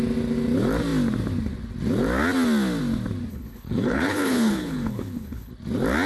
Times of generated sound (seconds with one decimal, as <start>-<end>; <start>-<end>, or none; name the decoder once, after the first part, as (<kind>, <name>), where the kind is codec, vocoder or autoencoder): 3.3-5.5 (codec, HILCodec)